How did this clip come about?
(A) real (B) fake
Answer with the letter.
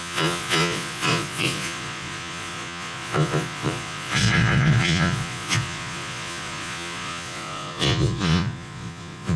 B